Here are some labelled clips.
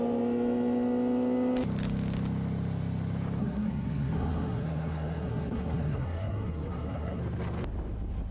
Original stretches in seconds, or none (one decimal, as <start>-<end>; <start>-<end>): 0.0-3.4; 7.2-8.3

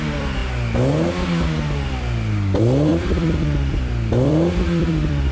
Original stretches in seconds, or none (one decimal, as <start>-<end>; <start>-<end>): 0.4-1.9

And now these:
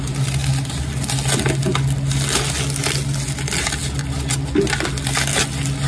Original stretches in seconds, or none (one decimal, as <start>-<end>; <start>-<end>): 0.0-5.9

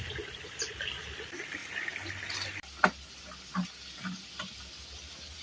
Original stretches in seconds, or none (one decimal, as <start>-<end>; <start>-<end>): 0.0-5.4

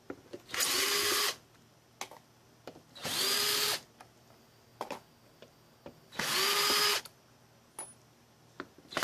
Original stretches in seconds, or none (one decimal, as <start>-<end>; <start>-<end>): 0.0-9.0

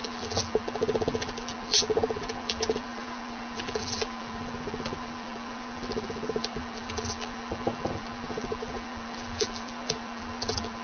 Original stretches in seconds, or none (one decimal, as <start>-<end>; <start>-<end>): none